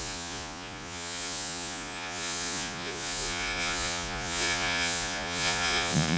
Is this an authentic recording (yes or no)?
no